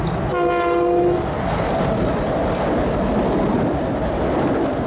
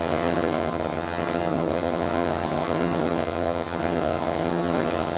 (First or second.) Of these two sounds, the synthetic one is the second